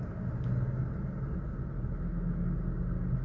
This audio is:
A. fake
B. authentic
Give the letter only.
B